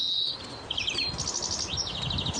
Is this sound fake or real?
real